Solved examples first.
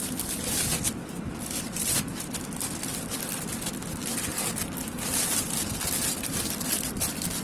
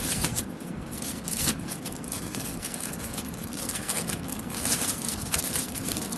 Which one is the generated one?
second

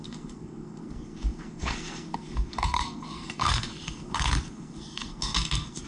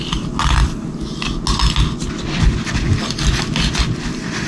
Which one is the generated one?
first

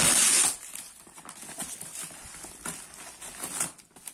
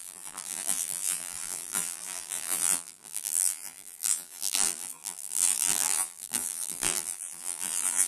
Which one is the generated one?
second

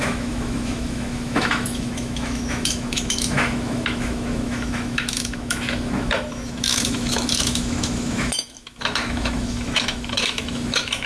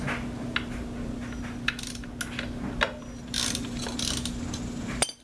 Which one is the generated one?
first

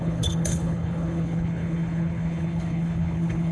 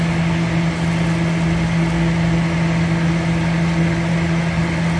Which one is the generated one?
first